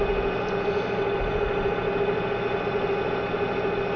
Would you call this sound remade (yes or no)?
no